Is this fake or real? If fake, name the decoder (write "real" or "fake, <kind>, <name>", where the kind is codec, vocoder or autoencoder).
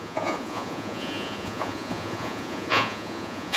fake, vocoder, Vocos